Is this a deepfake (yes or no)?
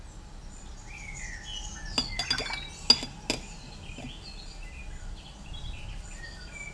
no